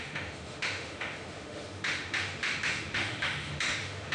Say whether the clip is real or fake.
fake